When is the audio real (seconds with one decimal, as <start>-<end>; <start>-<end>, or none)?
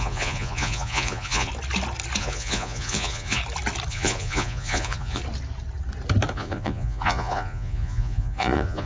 1.5-2.2; 3.4-3.9; 5.2-6.3